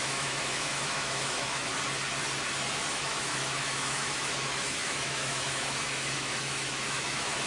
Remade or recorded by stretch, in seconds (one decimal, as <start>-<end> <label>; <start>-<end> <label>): 0.0-1.7 remade; 1.7-2.9 recorded; 2.9-7.5 remade